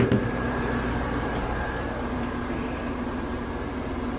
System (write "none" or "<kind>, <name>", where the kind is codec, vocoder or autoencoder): vocoder, BigVGAN v2